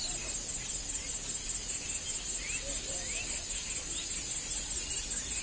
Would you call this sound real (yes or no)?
yes